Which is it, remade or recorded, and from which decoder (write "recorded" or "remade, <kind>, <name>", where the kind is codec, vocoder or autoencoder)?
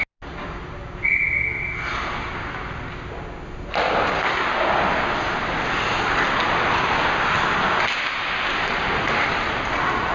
recorded